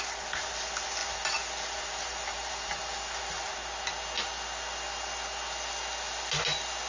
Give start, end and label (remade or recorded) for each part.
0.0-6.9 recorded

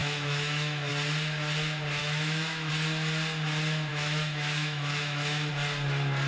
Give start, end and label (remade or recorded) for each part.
0.0-0.9 remade; 0.9-2.0 recorded; 2.0-2.7 remade; 2.7-3.9 recorded; 3.9-5.5 remade; 5.5-6.3 recorded

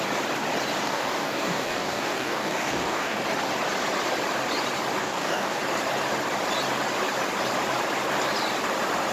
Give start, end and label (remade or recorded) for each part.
0.0-0.8 recorded; 0.8-3.2 remade; 3.2-5.0 recorded; 5.0-5.6 remade; 5.6-9.1 recorded

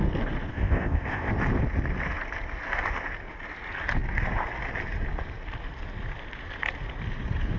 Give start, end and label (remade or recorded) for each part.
0.0-0.5 recorded; 0.5-1.3 remade; 1.3-7.6 recorded